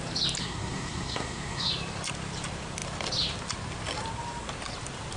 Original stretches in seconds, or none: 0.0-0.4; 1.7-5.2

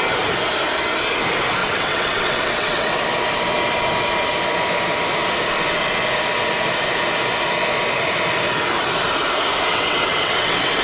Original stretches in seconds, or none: 0.0-1.6; 3.0-9.7

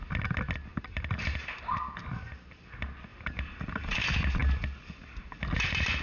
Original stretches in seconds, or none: 0.0-0.7; 1.6-3.1; 4.0-6.0

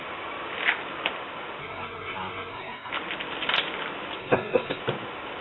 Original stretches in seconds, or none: 0.0-1.6; 2.9-4.2; 4.8-5.4

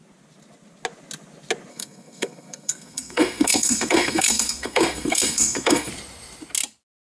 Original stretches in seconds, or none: 0.0-1.7; 5.9-7.0

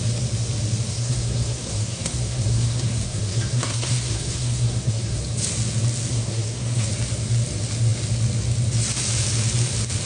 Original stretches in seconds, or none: 0.0-0.9; 5.2-6.1; 6.9-10.1

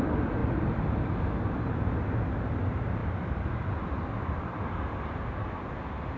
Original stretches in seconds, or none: 0.0-0.4; 0.9-3.0; 5.3-6.2

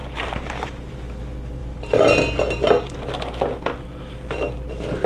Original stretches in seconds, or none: 0.9-1.6; 2.2-5.1